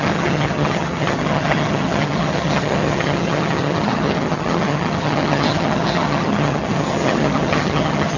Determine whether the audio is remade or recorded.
remade